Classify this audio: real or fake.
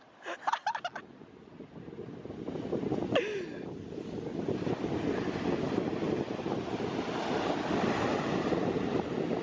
real